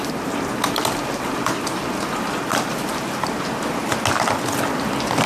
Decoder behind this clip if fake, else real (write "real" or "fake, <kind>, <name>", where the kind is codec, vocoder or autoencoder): real